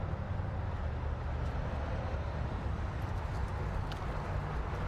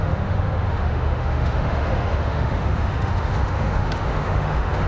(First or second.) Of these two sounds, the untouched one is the first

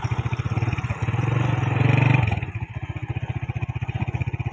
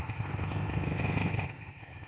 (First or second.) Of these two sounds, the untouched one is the first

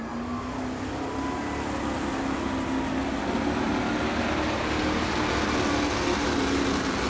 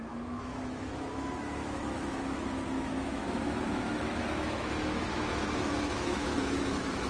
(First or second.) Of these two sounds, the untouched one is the first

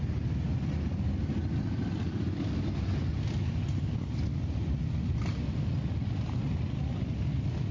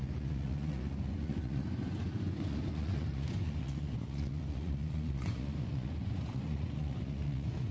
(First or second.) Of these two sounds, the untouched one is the first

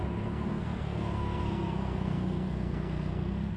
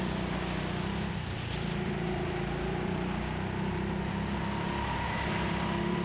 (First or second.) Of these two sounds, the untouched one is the second